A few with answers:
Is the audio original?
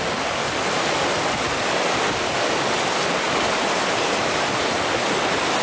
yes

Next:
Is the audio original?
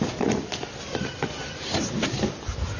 yes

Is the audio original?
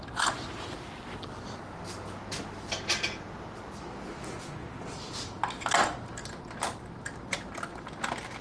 yes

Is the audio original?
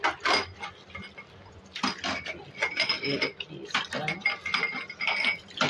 yes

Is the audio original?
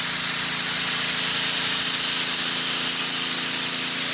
yes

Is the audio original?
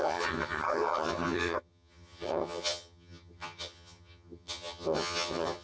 no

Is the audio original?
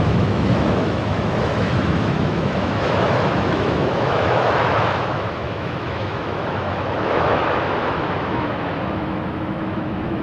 no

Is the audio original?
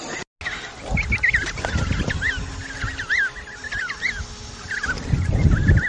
yes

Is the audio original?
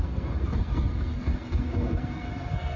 no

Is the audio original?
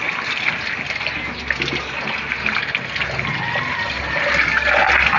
yes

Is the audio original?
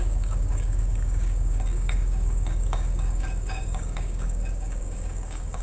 no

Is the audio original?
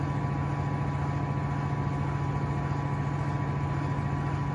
yes